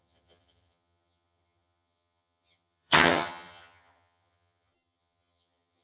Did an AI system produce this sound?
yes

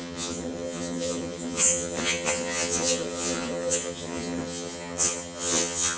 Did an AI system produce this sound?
yes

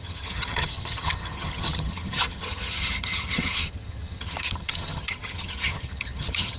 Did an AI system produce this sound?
yes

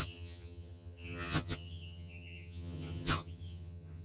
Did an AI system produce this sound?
yes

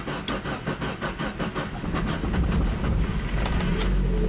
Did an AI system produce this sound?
no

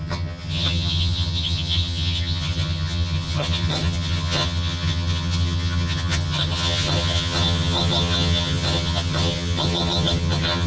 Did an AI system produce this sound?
yes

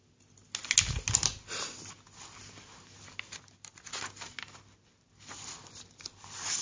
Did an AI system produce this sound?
no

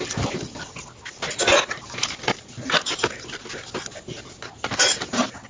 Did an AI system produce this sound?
no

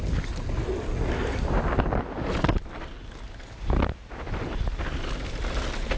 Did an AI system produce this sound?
no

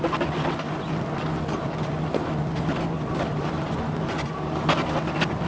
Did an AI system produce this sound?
no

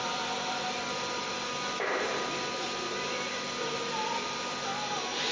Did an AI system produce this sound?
no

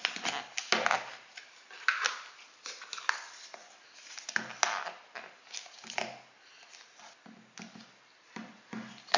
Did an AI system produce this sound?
no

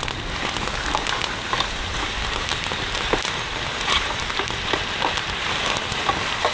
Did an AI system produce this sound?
no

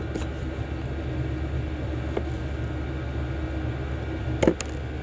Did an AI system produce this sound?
no